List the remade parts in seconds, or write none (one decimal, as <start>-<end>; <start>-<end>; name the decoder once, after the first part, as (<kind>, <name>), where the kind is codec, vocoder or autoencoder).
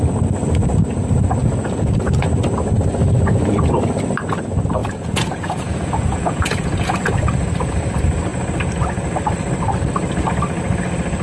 1.4-2.2 (vocoder, Vocos); 4.8-7.1